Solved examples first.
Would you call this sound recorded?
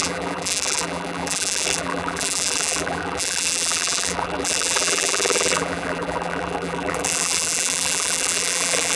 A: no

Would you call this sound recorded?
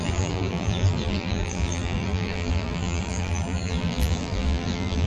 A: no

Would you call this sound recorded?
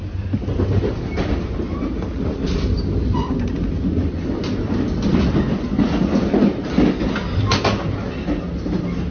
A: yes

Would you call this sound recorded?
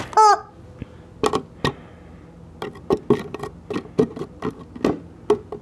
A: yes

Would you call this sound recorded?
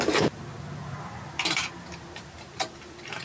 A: no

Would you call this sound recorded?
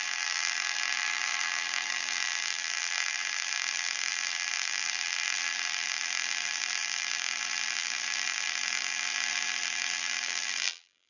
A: no